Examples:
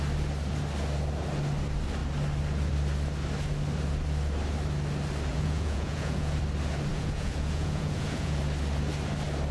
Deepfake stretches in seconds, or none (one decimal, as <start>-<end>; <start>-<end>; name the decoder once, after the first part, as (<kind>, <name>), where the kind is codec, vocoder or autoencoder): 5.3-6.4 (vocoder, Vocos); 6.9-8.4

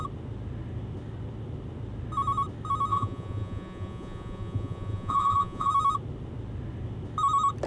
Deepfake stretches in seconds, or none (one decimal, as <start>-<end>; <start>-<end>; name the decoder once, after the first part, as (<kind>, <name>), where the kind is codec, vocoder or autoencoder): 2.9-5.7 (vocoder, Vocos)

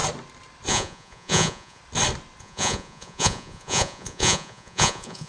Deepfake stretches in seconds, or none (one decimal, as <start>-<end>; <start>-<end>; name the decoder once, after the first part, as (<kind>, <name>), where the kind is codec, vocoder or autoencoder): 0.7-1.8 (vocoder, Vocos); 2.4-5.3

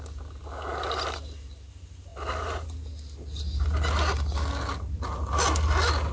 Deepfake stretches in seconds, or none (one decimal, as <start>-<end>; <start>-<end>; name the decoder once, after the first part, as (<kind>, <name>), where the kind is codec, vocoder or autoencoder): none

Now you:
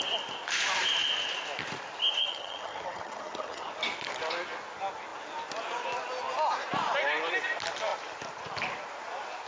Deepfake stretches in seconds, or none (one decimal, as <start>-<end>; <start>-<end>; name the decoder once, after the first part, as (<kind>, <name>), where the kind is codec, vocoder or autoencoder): 2.2-3.7 (vocoder, HiFi-GAN)

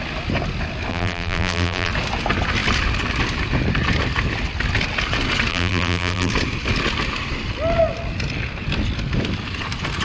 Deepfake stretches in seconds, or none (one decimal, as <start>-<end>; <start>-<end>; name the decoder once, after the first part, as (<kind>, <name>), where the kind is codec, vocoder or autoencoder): 0.9-1.9 (vocoder, BigVGAN v2); 5.5-6.3

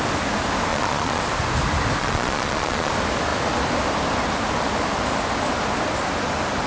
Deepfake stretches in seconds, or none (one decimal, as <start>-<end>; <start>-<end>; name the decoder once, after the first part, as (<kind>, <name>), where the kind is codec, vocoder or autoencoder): 0.7-1.2 (vocoder, Vocos); 2.0-2.9